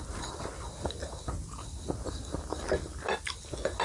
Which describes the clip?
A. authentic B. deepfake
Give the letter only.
A